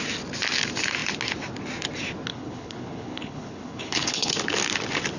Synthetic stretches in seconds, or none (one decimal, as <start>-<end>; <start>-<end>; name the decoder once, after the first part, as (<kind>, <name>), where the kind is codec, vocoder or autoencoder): 2.3-4.3 (codec, HILCodec)